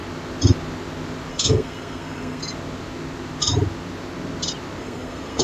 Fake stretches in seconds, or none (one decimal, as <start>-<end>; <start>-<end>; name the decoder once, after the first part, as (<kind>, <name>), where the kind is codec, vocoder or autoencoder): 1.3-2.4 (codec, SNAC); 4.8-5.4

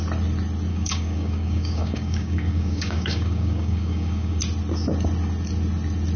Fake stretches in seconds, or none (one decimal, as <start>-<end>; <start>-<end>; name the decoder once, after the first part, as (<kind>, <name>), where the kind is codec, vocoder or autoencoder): 0.7-4.4 (codec, DAC)

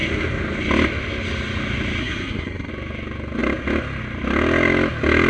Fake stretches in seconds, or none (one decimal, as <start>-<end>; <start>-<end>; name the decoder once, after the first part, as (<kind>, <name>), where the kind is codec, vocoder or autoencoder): 2.0-2.7 (codec, SNAC)

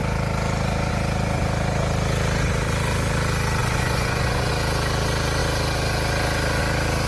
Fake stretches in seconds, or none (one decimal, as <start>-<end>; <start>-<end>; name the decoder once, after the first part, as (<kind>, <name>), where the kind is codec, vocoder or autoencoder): 3.6-4.5 (vocoder, Vocos)

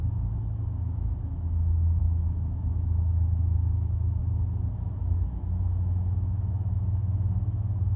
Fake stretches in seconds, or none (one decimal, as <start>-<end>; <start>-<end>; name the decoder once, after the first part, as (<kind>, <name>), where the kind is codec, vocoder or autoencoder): 0.0-4.2 (autoencoder, DAC-VAE); 4.7-8.0